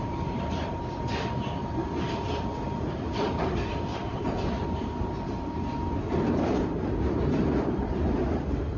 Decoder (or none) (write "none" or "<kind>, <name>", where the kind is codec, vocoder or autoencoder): vocoder, BigVGAN v2